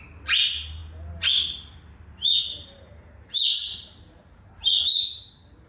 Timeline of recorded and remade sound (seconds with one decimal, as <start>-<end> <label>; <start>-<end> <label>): 0.0-5.7 recorded